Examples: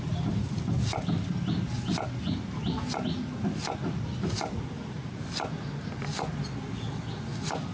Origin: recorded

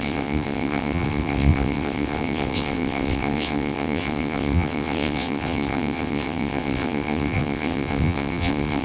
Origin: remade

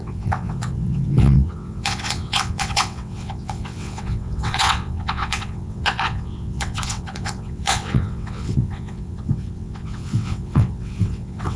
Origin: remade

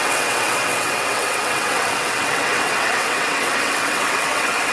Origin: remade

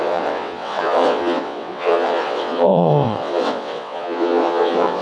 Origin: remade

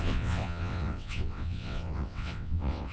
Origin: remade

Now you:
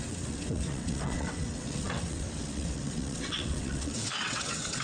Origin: remade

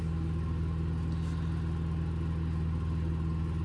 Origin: recorded